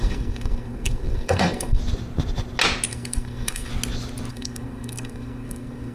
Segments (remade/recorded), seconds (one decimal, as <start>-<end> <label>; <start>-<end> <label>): 0.0-1.8 remade; 1.8-2.9 recorded; 2.9-3.7 remade; 3.7-4.3 recorded; 4.3-5.9 remade

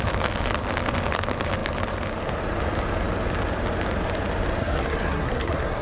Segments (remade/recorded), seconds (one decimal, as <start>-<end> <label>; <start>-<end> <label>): 0.0-4.6 recorded; 4.6-5.8 remade

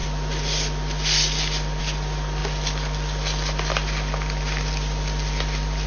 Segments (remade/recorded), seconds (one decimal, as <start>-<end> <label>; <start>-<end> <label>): 0.0-5.9 recorded

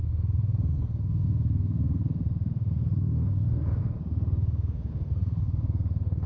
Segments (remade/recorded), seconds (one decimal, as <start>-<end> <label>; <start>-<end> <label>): 0.0-6.3 remade